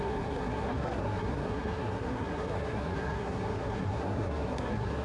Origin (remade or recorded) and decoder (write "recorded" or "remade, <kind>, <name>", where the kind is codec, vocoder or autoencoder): remade, codec, SNAC